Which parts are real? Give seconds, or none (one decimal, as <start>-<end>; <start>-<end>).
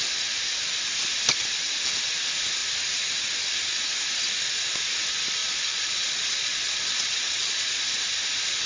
0.0-5.4; 7.6-8.7